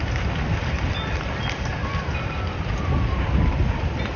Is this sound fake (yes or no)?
no